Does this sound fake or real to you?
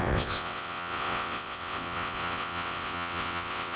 fake